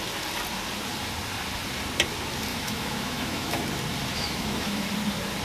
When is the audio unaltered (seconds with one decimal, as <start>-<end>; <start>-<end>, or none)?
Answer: 0.0-2.5; 3.6-4.1; 4.9-5.4